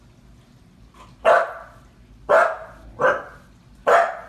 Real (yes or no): yes